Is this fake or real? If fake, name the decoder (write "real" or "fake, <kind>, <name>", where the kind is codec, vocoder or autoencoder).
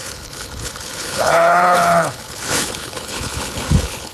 fake, codec, HILCodec